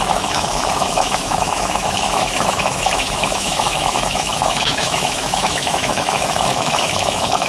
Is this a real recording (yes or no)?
no